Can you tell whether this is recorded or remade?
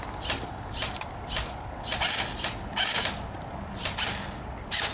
recorded